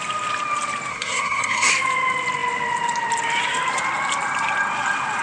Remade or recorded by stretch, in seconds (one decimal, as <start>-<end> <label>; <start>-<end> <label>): 0.0-0.9 recorded; 0.9-1.7 remade; 1.7-5.2 recorded